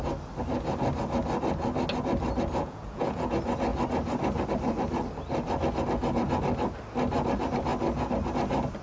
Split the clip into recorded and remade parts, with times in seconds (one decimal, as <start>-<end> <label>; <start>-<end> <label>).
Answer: 0.0-2.6 recorded; 2.6-3.3 remade; 3.3-8.8 recorded